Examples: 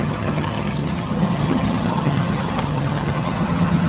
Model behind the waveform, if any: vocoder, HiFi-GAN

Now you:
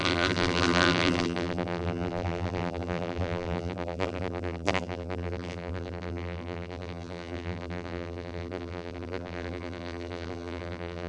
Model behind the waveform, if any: vocoder, BigVGAN v2